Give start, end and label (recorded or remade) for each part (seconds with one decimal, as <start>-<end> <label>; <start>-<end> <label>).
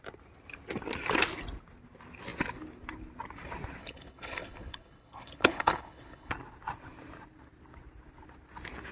0.0-3.8 recorded; 3.8-6.3 remade; 6.3-8.9 recorded